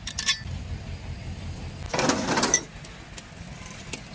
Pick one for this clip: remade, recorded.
recorded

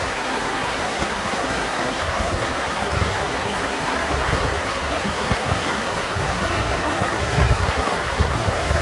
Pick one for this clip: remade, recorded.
remade